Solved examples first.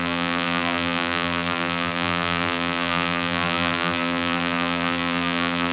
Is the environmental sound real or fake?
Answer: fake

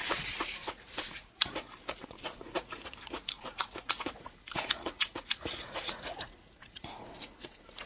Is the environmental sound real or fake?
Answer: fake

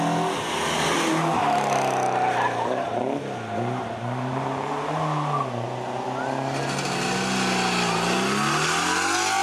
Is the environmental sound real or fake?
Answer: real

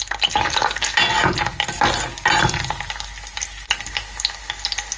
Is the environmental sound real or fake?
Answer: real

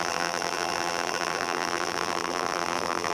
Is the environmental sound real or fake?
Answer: fake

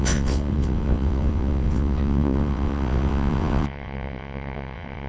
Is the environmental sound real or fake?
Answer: fake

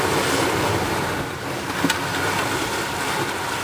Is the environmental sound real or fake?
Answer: real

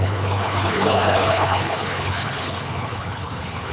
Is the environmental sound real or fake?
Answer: fake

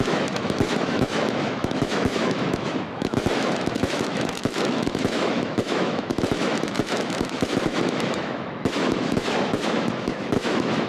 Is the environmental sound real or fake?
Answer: fake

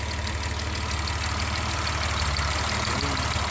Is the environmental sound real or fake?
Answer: real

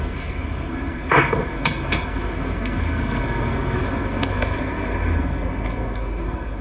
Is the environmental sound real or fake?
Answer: fake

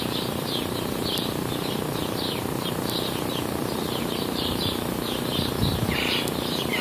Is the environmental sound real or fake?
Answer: fake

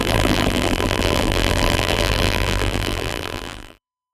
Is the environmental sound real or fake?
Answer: fake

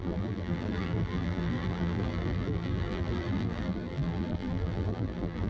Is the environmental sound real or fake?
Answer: fake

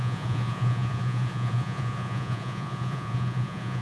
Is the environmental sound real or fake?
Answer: fake